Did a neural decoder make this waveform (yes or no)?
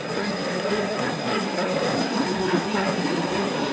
yes